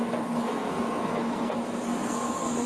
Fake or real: fake